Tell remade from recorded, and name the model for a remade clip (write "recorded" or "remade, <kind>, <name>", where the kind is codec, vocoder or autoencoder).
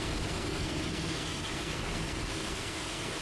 remade, codec, SNAC